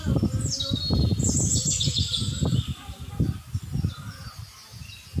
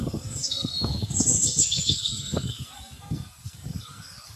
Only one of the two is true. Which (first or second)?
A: first